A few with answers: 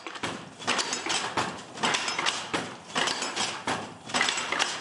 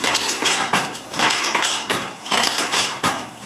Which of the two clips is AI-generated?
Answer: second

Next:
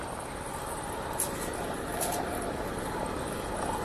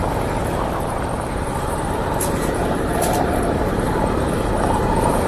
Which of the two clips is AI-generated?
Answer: second